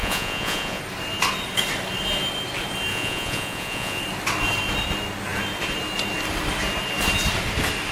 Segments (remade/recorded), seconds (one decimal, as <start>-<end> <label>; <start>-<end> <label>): 0.0-0.8 remade; 0.8-2.9 recorded; 2.9-4.0 remade; 4.0-7.9 recorded